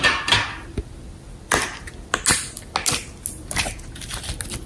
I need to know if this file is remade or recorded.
recorded